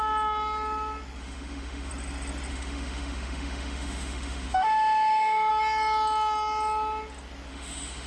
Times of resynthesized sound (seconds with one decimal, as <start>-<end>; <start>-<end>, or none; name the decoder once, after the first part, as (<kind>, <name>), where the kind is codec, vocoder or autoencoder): 1.2-1.9 (autoencoder, DAC-VAE); 2.5-5.5; 7.5-8.1

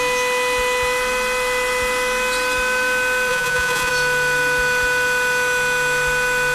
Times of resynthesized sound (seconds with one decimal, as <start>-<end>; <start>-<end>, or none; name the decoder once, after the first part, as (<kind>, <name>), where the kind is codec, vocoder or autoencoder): 3.3-3.9 (vocoder, Vocos)

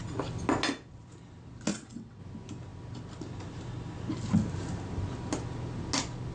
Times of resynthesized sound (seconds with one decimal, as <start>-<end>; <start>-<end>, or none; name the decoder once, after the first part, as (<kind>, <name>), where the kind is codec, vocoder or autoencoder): 1.7-2.2 (vocoder, WaveNeXt)